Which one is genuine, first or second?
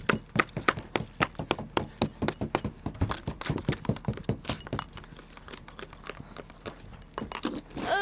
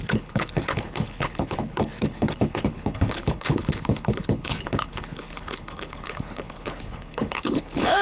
first